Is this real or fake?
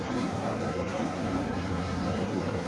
fake